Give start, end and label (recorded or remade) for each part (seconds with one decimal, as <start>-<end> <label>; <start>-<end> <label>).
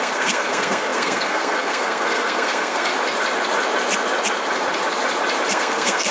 0.0-2.9 remade; 2.9-5.5 recorded; 5.5-6.1 remade